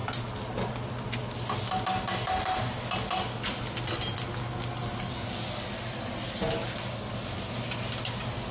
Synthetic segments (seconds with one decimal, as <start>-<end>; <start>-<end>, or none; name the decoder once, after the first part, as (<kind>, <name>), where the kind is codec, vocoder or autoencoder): none